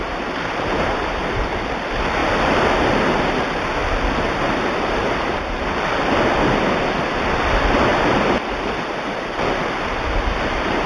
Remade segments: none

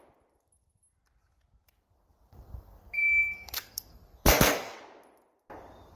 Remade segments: 2.3-4.8

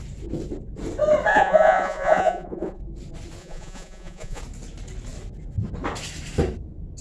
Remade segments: 1.3-2.8; 3.4-4.4

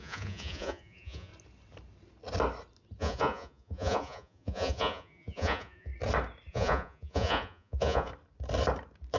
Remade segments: 0.0-1.3; 3.0-5.9; 6.5-8.1

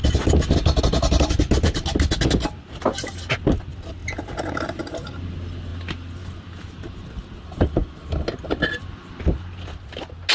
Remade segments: none

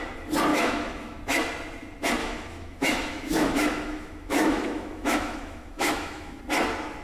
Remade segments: 0.5-1.2; 2.2-6.4